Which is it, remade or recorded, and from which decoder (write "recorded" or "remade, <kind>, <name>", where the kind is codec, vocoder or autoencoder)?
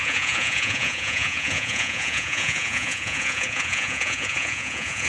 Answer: remade, vocoder, Vocos